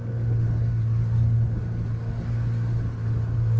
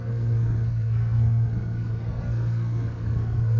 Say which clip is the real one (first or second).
first